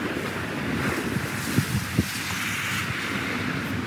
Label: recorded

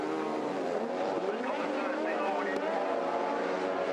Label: recorded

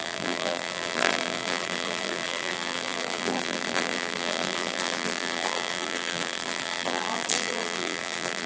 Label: remade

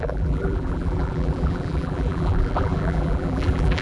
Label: remade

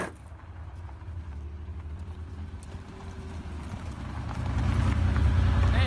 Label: recorded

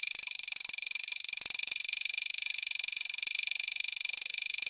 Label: remade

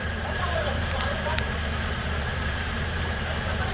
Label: remade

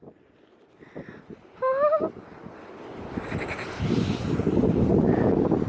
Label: recorded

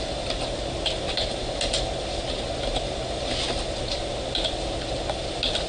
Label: recorded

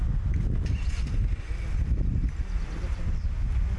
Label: recorded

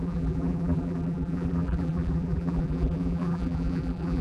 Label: remade